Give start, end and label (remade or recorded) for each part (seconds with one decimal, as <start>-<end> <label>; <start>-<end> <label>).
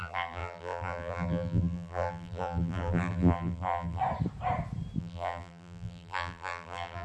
0.0-4.0 remade; 4.0-5.0 recorded; 5.0-7.0 remade